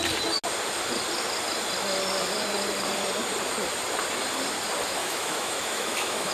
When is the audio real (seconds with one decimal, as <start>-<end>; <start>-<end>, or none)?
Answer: 0.0-5.0